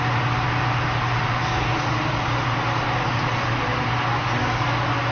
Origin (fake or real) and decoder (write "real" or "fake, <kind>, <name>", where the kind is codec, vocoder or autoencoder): real